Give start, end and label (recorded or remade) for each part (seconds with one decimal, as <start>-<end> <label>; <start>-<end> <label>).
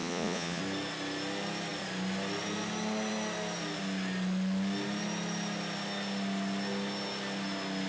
0.0-0.6 remade; 0.6-7.9 recorded